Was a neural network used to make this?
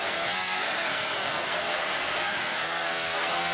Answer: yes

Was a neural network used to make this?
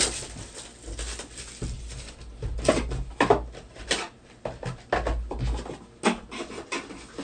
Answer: no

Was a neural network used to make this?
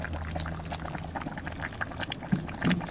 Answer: no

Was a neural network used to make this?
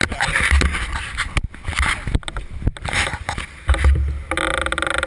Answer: no